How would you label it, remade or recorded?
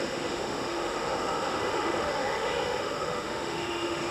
remade